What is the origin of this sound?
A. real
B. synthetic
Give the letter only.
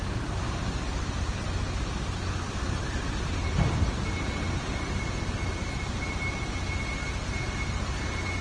A